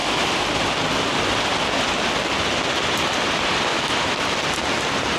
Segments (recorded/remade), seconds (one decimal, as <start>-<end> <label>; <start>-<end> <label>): 0.0-3.1 recorded; 3.1-3.7 remade; 3.7-4.5 recorded; 4.5-5.2 remade